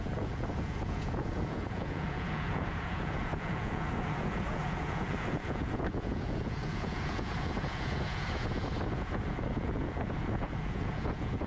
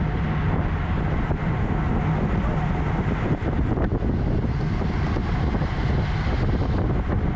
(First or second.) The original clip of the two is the second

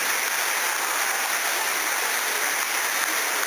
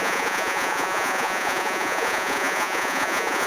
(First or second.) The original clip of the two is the first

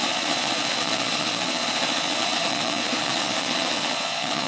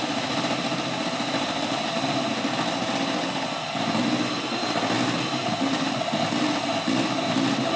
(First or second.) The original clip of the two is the second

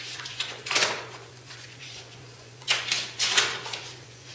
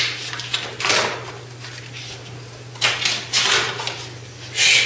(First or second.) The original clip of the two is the second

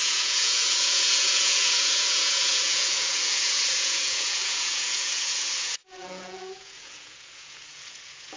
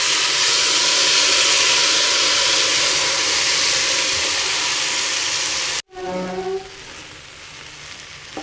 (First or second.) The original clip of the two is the second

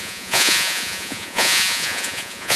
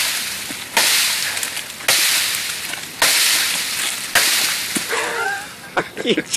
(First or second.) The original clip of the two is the second